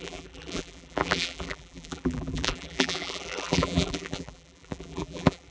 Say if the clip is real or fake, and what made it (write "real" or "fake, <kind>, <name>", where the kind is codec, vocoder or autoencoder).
fake, vocoder, BigVGAN v2